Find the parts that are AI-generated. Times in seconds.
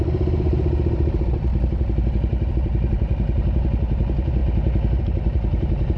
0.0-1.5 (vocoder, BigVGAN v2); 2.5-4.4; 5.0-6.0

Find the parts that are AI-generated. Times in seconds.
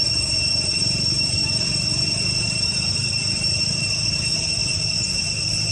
0.0-4.6 (vocoder, BigVGAN v2)